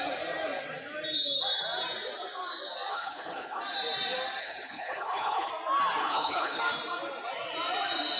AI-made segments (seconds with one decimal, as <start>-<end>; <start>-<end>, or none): 2.9-3.6; 4.4-5.5; 6.0-6.6